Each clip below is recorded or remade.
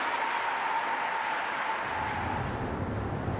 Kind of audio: recorded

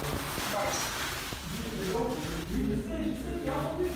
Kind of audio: recorded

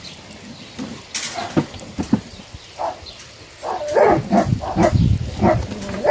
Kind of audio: recorded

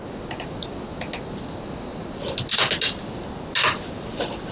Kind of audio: recorded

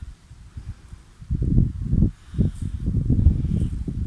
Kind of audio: recorded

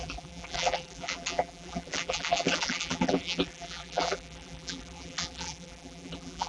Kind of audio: remade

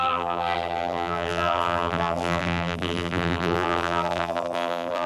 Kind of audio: remade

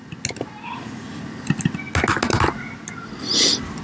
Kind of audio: recorded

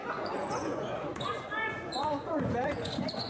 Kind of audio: remade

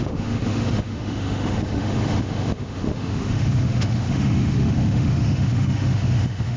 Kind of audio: remade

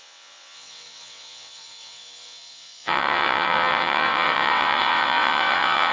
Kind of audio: remade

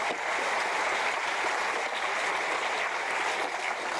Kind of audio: recorded